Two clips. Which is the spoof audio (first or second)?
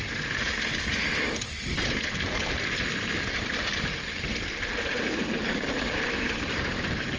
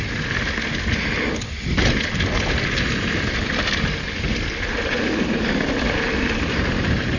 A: first